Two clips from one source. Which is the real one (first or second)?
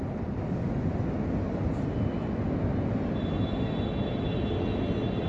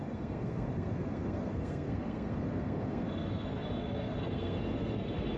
first